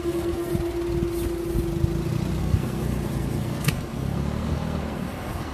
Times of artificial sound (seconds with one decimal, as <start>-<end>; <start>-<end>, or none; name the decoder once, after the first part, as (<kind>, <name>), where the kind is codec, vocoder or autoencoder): 0.0-0.5 (codec, SNAC); 2.4-5.5

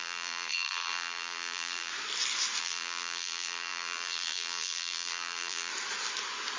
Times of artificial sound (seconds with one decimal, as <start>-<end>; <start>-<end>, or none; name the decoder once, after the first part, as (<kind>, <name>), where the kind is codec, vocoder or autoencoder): 0.0-1.9 (vocoder, BigVGAN v2); 2.6-5.7

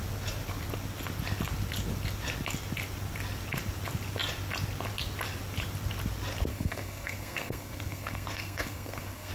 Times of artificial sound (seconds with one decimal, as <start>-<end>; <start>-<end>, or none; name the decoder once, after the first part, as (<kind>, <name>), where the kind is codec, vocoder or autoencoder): 6.5-9.3 (codec, SNAC)

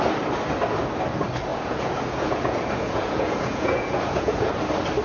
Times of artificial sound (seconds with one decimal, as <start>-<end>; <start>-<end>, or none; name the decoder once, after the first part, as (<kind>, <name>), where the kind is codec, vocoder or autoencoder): 1.5-4.5 (vocoder, Vocos)

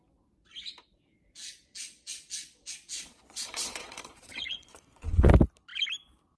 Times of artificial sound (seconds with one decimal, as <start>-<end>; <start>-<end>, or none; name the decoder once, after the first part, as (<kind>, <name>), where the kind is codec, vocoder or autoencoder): 2.9-5.3 (vocoder, Vocos)